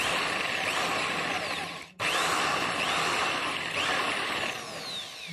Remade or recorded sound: recorded